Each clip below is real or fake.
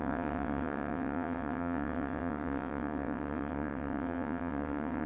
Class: fake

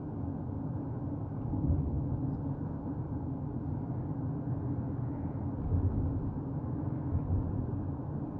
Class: real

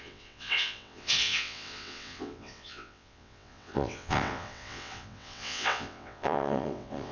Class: fake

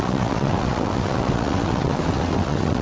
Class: fake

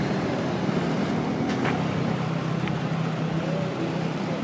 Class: real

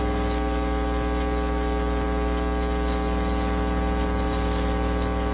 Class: real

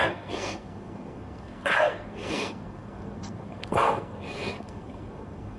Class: fake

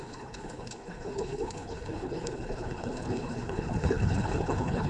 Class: fake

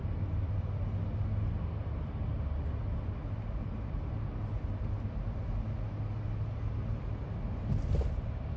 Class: real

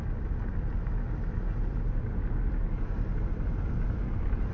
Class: real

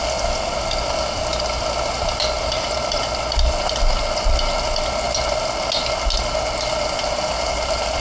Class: real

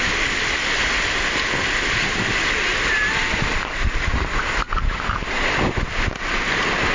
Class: real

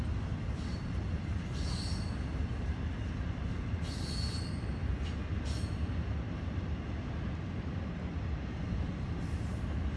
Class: real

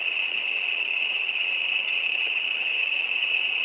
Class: fake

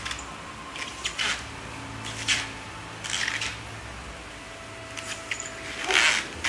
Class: real